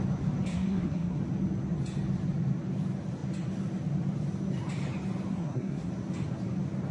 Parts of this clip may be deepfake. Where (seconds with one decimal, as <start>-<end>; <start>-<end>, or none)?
0.5-1.2; 5.3-5.9